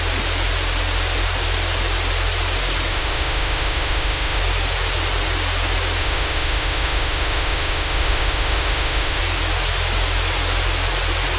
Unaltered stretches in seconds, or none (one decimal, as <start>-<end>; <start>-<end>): 0.0-2.9; 4.4-6.0; 9.2-11.4